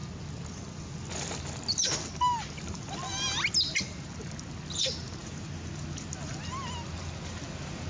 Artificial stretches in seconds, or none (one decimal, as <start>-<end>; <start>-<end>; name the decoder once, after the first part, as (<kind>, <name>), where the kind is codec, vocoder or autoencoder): none